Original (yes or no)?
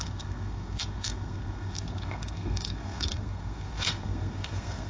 no